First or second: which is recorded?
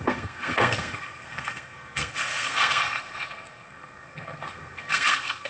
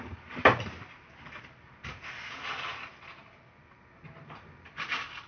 second